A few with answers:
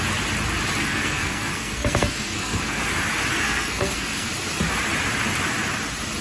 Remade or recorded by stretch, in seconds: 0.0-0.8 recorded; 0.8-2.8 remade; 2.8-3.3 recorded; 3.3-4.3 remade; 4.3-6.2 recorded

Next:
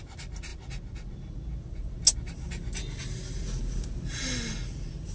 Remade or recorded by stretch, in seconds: 0.0-5.1 recorded

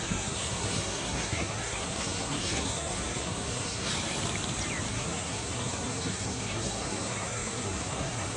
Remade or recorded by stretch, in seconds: 0.0-3.9 remade; 3.9-4.9 recorded; 4.9-8.4 remade

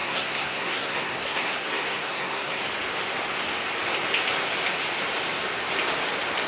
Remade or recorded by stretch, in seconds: 0.0-2.6 remade; 2.6-6.5 recorded